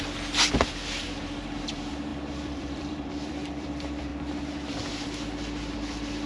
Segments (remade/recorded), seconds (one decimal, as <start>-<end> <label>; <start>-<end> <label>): 0.0-4.1 remade; 4.1-4.8 recorded; 4.8-6.3 remade